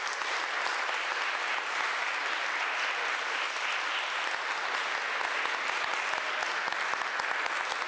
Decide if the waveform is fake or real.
real